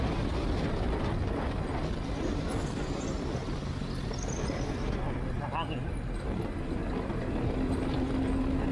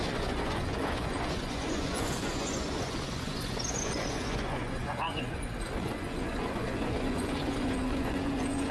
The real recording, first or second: first